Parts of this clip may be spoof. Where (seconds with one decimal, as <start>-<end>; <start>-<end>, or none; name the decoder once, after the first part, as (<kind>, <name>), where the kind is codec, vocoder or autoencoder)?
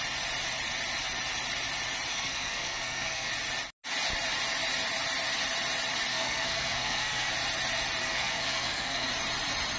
2.1-3.3 (codec, SNAC); 6.1-7.3; 8.0-9.1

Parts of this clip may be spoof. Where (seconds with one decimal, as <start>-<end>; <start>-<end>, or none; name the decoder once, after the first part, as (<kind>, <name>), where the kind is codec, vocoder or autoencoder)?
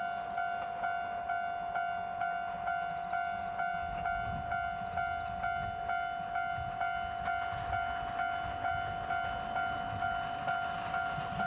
none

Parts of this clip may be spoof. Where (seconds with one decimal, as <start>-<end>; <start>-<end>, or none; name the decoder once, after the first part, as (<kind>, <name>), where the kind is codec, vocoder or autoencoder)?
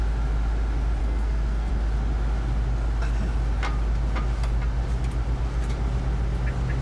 1.0-1.7 (codec, SNAC)